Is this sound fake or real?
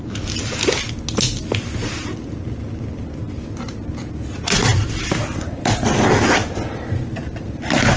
real